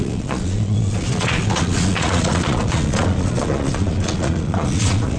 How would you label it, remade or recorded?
remade